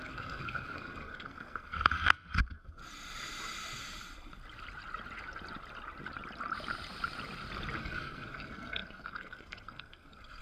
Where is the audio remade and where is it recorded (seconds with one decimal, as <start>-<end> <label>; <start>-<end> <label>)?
0.0-2.8 remade; 2.8-7.8 recorded; 7.8-10.4 remade